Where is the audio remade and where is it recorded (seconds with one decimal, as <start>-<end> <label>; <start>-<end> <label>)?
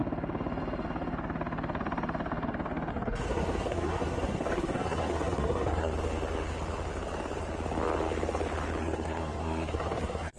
0.0-2.9 recorded; 2.9-5.9 remade; 5.9-8.8 recorded; 8.8-10.4 remade